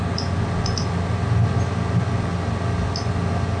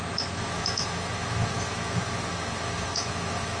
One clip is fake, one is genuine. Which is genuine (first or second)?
first